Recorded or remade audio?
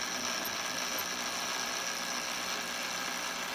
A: recorded